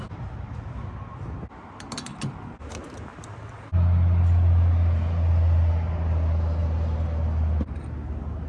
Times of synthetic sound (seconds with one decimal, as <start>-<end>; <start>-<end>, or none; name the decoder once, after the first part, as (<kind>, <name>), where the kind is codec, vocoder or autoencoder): none